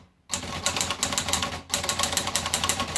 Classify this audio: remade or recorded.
recorded